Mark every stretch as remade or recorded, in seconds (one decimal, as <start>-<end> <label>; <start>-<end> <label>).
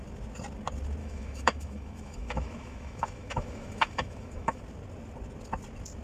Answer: 0.0-1.0 recorded; 1.0-4.6 remade; 4.6-6.0 recorded